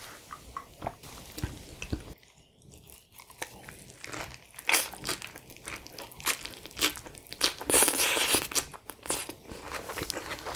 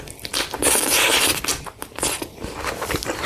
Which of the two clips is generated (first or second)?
second